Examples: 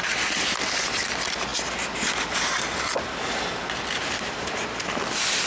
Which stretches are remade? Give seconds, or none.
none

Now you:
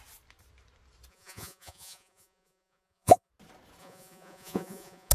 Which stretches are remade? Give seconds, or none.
1.1-3.3 (vocoder, Vocos); 3.8-5.1

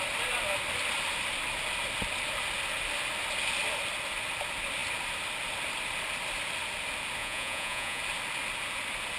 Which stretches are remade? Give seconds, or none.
7.2-8.0 (vocoder, Vocos)

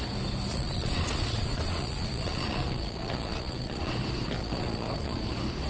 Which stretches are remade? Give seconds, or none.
0.5-3.9 (vocoder, Vocos); 4.4-5.2

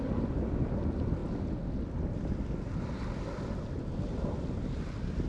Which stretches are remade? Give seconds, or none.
none

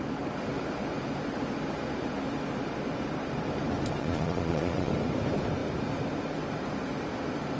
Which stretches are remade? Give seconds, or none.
4.0-4.9 (vocoder, Vocos)

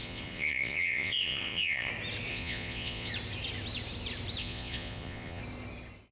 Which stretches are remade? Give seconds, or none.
0.0-1.9 (vocoder, Vocos); 2.3-3.1; 4.4-5.4

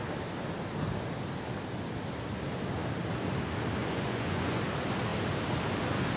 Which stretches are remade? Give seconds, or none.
3.8-4.6 (vocoder, Vocos)